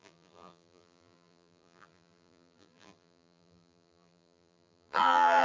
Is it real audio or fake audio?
fake